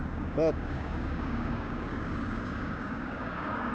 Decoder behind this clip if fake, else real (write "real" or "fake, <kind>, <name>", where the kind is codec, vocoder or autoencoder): fake, codec, DAC